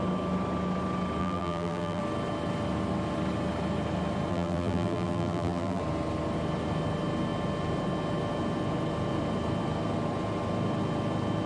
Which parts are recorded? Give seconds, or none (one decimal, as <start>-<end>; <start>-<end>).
0.0-1.2; 2.0-4.3; 5.8-11.5